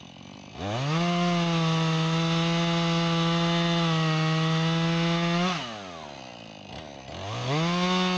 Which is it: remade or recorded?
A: recorded